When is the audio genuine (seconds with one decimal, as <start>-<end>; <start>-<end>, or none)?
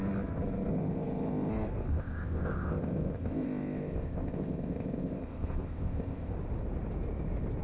0.0-0.7; 1.5-1.9; 6.3-7.6